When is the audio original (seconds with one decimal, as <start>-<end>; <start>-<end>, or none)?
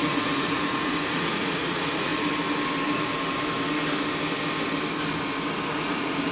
2.1-5.7